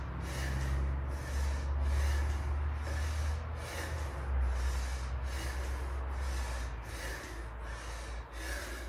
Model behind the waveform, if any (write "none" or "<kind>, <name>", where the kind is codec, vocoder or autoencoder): none